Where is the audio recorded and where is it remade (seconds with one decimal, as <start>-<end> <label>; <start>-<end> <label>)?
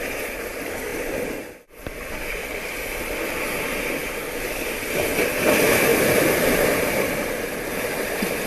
0.0-0.9 recorded; 0.9-2.3 remade; 2.3-4.0 recorded; 4.0-5.1 remade; 5.1-5.9 recorded; 5.9-6.5 remade; 6.5-8.5 recorded